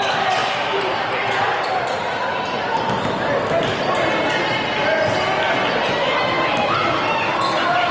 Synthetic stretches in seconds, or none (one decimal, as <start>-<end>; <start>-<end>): 0.4-5.1